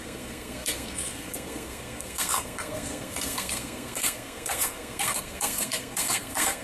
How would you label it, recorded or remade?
remade